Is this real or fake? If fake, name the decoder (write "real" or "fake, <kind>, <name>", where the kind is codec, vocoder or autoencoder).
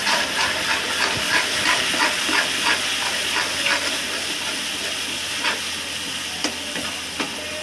real